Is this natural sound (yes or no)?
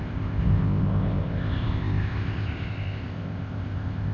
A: no